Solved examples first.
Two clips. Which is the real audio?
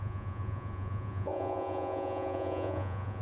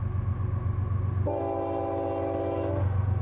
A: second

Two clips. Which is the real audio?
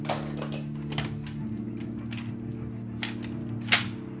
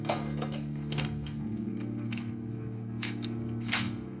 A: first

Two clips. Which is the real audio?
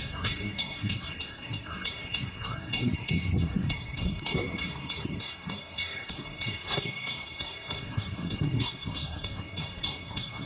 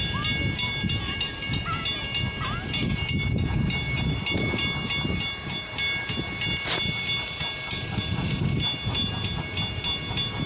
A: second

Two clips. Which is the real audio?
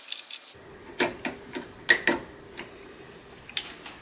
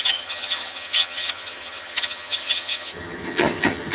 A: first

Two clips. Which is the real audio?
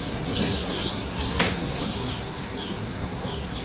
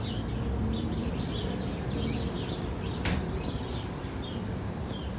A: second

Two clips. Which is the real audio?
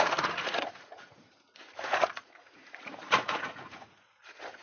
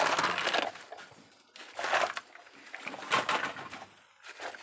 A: second